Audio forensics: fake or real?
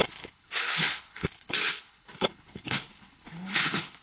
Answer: fake